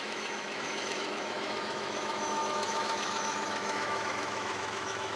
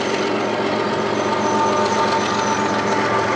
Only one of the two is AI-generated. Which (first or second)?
first